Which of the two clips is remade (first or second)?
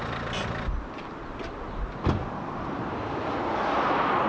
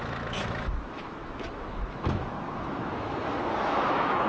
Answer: second